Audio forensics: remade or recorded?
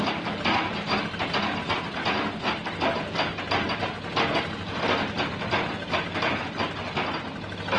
recorded